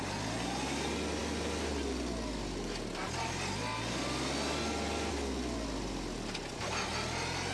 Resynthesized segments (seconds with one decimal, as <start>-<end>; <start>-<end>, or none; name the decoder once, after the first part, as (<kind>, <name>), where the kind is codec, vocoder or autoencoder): none